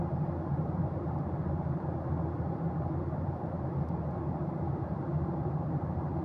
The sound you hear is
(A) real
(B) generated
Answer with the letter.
B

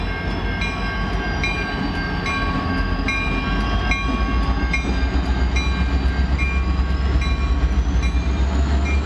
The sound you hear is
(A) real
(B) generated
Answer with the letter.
A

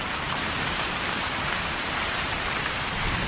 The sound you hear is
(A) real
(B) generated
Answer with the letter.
B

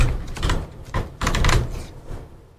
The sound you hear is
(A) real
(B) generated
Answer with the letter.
B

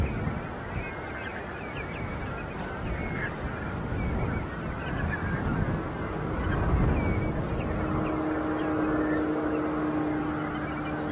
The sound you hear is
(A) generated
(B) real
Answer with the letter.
B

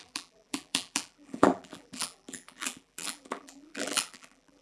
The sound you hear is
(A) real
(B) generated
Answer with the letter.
B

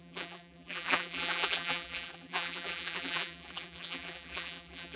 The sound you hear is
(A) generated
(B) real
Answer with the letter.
A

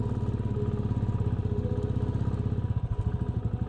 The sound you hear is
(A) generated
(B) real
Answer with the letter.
B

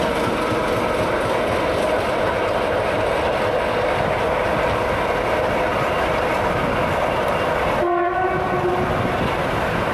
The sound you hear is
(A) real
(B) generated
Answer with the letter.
A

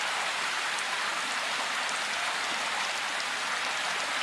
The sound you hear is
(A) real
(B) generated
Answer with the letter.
A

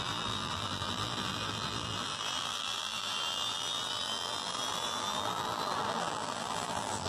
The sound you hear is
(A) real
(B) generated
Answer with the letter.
B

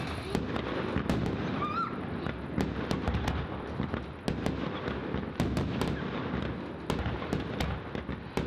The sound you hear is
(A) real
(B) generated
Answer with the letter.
A